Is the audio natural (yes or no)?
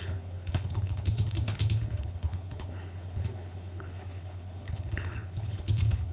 no